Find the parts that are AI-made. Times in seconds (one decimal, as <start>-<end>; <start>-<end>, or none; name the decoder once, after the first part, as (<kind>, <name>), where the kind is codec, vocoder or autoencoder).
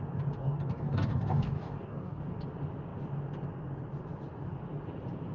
0.4-2.2 (codec, DAC)